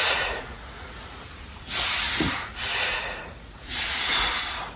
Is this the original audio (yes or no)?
no